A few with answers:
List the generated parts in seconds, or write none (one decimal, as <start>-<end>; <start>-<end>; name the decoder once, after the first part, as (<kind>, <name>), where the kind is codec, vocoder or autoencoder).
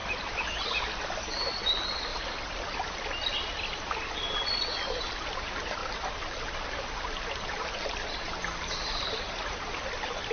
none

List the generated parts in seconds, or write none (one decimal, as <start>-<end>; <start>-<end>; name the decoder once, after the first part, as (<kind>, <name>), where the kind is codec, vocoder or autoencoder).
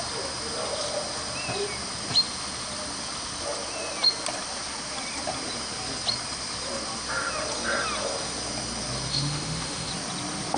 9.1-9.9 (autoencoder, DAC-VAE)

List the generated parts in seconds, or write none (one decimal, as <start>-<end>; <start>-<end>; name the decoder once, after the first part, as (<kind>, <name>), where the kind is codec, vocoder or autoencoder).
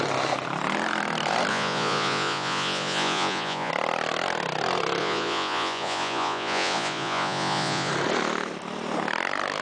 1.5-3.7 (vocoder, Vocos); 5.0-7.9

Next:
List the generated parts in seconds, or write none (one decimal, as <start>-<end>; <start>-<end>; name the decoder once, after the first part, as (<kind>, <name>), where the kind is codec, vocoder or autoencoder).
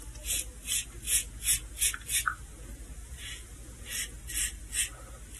3.0-4.0 (vocoder, Vocos)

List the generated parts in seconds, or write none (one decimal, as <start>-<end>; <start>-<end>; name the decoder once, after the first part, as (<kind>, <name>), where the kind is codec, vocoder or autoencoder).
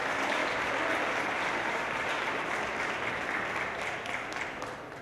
0.0-0.4 (vocoder, BigVGAN v2); 1.2-1.8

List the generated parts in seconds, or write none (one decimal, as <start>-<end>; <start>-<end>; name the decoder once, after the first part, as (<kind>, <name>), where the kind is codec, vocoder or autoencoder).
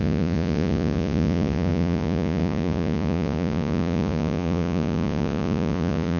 0.0-6.2 (vocoder, Vocos)